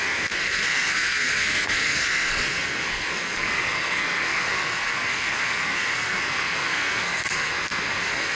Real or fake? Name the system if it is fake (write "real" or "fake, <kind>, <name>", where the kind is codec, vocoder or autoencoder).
fake, codec, SNAC